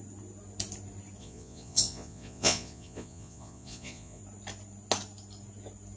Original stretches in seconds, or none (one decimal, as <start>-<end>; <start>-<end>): 0.0-1.2; 4.2-6.0